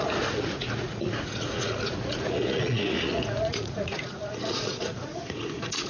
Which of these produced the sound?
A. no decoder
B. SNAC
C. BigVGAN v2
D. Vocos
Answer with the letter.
D